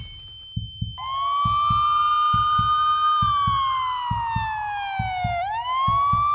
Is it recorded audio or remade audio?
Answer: recorded